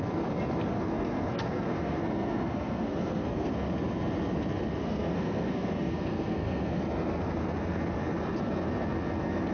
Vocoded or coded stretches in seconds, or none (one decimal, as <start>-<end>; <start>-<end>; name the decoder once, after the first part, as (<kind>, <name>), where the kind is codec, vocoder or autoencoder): 0.7-3.5 (codec, SNAC); 4.8-6.8